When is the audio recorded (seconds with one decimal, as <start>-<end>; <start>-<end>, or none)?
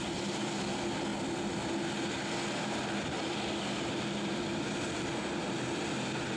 0.0-6.4